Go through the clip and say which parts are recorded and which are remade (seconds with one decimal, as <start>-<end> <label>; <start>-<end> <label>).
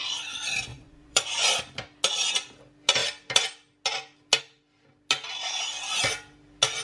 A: 0.0-0.7 recorded; 0.7-1.6 remade; 1.6-6.8 recorded